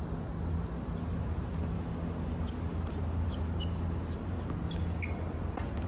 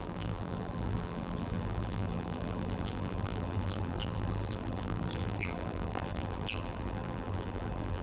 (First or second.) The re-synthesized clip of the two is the second